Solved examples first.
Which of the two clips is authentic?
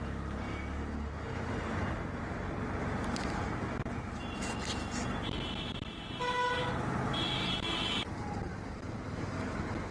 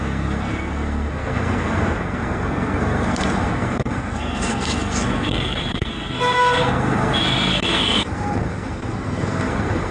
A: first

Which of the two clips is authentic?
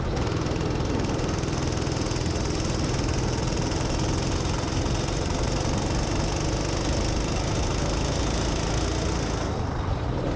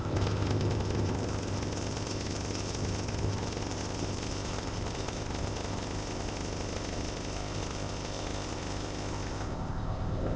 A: first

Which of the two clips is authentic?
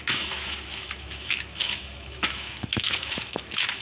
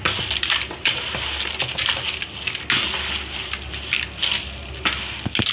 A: second